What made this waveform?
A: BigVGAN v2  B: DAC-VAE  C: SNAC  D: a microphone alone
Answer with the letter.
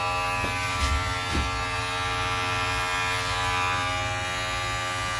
D